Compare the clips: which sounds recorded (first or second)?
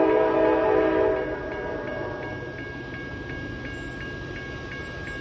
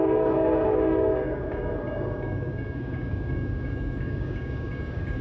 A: first